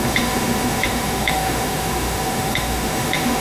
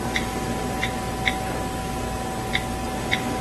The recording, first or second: second